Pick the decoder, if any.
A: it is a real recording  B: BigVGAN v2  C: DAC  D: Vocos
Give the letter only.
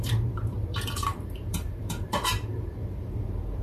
B